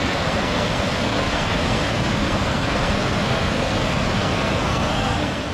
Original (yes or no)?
no